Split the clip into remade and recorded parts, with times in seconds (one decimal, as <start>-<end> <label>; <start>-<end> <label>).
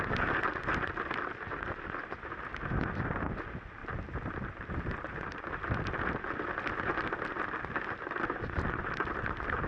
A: 0.0-3.8 recorded; 3.8-6.1 remade; 6.1-9.7 recorded